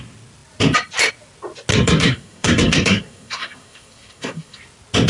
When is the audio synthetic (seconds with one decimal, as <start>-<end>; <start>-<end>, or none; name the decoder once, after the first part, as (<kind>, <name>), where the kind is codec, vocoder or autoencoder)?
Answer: 1.7-4.6 (codec, SNAC)